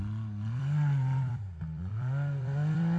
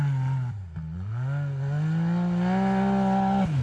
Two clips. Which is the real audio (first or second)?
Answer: second